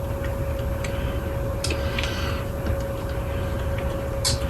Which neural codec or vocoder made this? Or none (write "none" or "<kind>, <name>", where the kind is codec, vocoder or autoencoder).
none